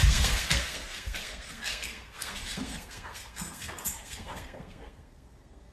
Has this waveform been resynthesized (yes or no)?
yes